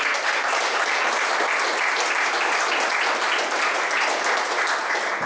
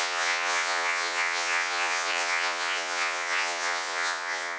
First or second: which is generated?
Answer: second